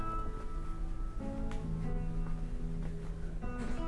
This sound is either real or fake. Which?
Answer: real